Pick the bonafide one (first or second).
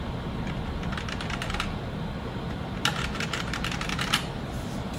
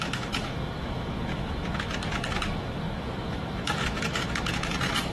first